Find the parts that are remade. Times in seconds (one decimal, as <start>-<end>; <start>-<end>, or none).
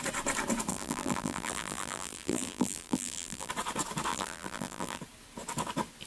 0.7-3.5; 4.1-5.0